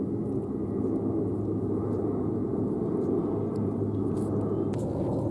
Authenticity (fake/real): real